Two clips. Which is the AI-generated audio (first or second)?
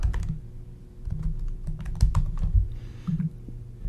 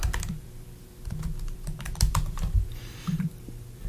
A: second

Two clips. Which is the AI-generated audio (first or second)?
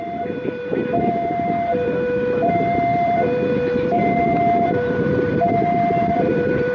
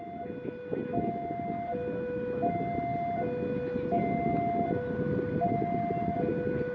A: first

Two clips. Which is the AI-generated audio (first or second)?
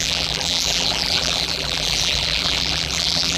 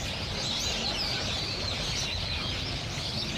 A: first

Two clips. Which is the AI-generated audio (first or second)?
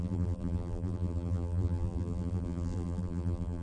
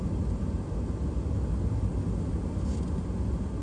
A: first